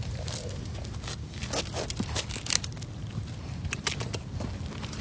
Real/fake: real